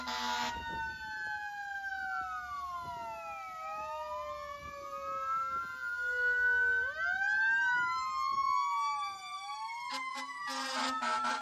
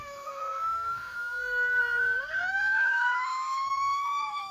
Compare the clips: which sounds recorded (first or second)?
first